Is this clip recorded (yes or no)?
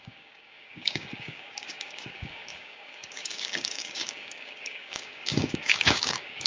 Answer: no